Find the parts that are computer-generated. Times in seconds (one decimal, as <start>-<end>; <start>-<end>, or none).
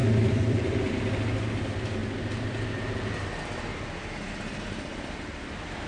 0.0-1.0; 2.0-5.5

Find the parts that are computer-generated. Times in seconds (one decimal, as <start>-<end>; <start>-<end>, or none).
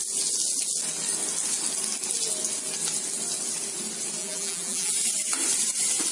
4.2-4.9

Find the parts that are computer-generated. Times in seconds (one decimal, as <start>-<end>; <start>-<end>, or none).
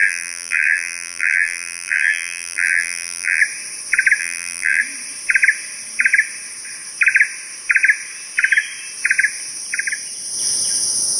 0.0-3.4; 4.2-4.8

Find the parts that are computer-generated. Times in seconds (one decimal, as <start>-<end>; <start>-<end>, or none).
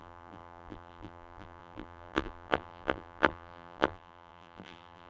0.0-5.1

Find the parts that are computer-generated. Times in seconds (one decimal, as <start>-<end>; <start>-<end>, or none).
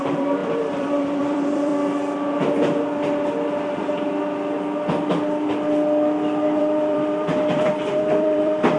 0.0-1.7; 6.6-8.8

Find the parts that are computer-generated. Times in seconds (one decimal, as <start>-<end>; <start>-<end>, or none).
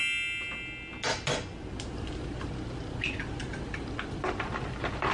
3.4-4.1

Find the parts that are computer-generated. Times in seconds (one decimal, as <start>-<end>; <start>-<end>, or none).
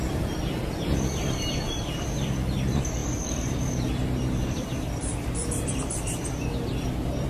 0.0-1.5; 3.0-5.9